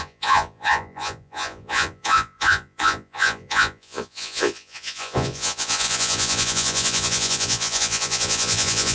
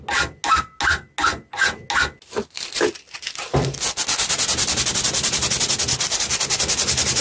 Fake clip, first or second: first